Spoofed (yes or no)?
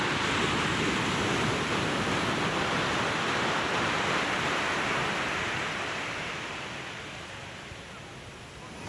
no